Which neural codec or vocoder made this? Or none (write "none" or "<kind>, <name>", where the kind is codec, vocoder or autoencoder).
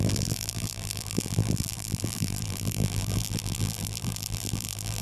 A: vocoder, BigVGAN v2